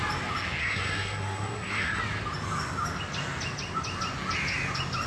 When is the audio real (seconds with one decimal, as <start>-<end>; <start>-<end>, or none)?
0.0-0.6; 2.0-5.1